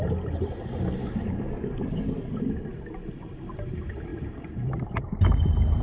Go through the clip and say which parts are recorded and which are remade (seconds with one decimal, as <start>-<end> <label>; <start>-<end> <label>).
0.0-1.0 recorded; 1.0-2.3 remade; 2.3-5.8 recorded